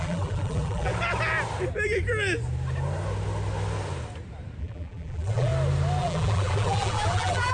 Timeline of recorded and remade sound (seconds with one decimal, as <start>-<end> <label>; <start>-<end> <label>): 0.0-0.9 remade; 0.9-4.6 recorded; 4.6-5.5 remade; 5.5-6.0 recorded; 6.0-7.5 remade